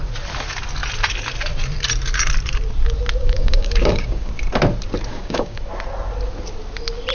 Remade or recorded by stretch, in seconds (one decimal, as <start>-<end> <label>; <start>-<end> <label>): 0.0-3.2 recorded; 3.2-4.3 remade; 4.3-5.1 recorded; 5.1-5.6 remade; 5.6-7.1 recorded